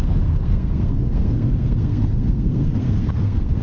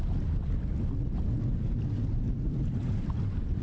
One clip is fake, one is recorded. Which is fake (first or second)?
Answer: first